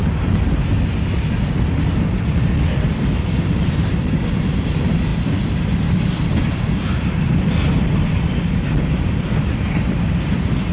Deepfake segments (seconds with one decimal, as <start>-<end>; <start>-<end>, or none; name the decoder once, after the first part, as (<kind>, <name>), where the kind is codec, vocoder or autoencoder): none